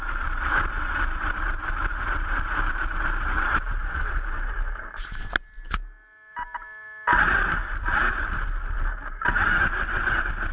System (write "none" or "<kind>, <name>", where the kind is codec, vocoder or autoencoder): none